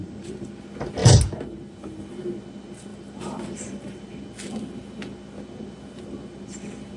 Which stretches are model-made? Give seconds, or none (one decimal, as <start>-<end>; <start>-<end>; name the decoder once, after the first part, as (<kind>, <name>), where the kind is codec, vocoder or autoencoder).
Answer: 0.0-0.5 (vocoder, BigVGAN v2); 2.9-4.1